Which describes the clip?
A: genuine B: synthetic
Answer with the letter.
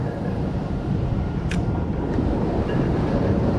B